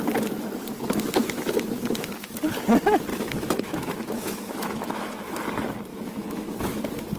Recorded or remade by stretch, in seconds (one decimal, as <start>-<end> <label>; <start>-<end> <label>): 0.0-1.2 recorded; 1.2-2.4 remade; 2.4-3.1 recorded; 3.1-5.4 remade; 5.4-5.9 recorded; 5.9-6.8 remade; 6.8-7.2 recorded